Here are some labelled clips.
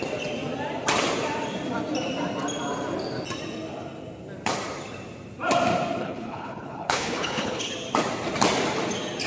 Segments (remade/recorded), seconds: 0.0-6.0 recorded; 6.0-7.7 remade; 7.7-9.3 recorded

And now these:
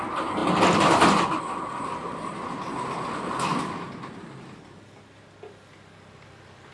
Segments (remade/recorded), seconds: 0.0-6.7 recorded

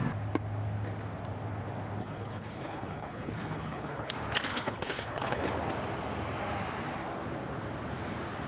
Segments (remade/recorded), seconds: 0.0-2.0 recorded; 2.0-4.1 remade; 4.1-4.5 recorded; 4.5-5.5 remade; 5.5-8.5 recorded

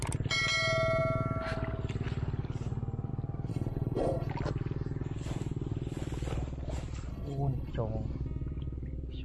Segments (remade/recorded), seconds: 0.0-3.5 recorded; 3.5-4.3 remade; 4.3-7.1 recorded; 7.1-7.7 remade; 7.7-9.2 recorded

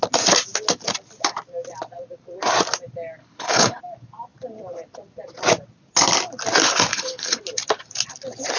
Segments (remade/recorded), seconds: 0.0-3.2 recorded; 3.2-3.8 remade; 3.8-6.9 recorded; 6.9-7.4 remade; 7.4-8.6 recorded

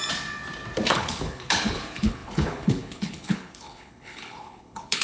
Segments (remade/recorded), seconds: 0.0-0.9 recorded; 0.9-5.0 remade